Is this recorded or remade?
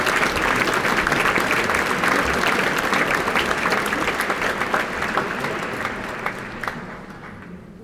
recorded